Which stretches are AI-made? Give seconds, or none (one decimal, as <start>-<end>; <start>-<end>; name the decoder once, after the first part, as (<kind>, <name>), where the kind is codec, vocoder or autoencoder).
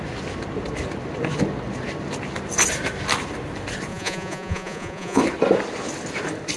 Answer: 3.9-5.2 (vocoder, Vocos)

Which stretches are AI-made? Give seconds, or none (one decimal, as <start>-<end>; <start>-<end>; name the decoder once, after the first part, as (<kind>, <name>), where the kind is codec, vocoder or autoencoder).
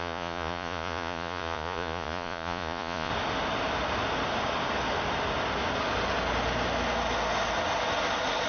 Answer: 0.0-3.1 (vocoder, Vocos)